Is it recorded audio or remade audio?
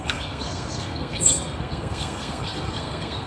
remade